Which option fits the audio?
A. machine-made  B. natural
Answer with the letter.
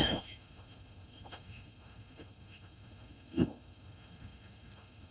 A